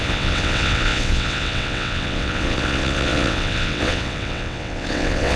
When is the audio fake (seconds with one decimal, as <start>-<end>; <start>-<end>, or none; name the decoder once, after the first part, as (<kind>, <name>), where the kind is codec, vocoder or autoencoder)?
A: 0.0-5.4 (vocoder, WaveNeXt)